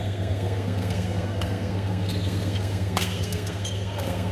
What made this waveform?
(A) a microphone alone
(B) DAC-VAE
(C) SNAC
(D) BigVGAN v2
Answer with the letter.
C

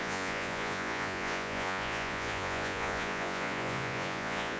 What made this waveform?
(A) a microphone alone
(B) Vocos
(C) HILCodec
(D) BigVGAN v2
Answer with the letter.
B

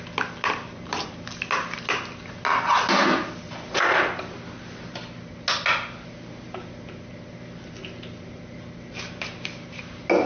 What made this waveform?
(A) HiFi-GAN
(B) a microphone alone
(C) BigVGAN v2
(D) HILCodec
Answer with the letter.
B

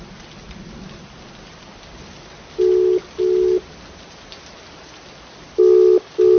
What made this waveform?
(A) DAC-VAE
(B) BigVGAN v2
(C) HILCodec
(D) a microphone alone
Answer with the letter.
D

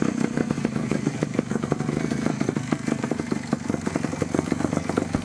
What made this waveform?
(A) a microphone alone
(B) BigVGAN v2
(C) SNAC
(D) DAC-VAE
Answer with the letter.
C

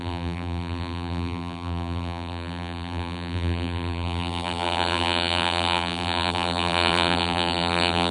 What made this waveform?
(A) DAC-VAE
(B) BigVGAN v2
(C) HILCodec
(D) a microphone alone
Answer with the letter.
B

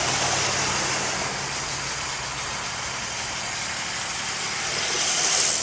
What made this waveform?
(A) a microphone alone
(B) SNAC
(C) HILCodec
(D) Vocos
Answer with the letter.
A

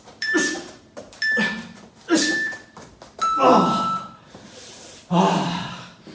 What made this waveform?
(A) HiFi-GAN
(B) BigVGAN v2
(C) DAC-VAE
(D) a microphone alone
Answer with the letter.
B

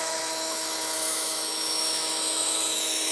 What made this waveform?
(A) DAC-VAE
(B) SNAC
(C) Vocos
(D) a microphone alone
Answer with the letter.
A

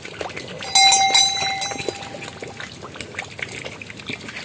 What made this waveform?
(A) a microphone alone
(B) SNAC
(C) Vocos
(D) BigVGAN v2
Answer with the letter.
A